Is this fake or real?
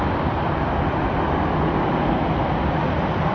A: real